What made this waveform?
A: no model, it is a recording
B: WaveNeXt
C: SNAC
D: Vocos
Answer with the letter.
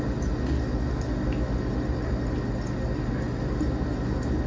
A